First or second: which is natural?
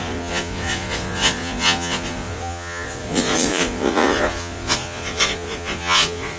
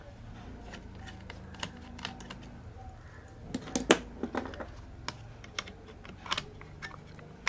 second